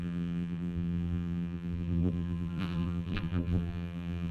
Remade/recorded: remade